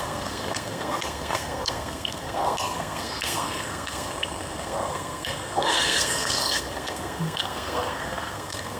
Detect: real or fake fake